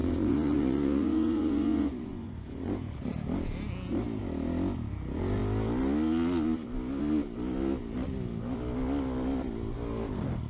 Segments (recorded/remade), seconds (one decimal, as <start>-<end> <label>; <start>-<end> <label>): 0.0-3.1 remade; 3.1-10.5 recorded